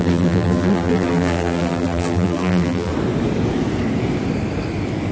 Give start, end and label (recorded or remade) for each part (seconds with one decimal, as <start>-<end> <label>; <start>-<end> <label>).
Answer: 0.0-2.9 remade; 2.9-5.1 recorded